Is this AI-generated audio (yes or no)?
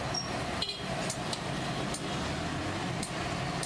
no